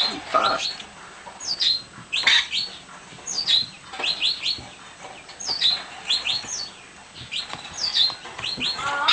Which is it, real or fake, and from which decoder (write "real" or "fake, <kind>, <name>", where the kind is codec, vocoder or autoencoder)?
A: real